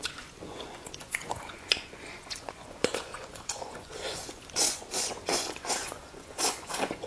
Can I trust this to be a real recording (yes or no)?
no